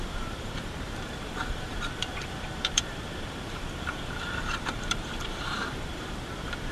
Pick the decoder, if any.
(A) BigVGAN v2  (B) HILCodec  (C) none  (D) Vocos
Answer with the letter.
A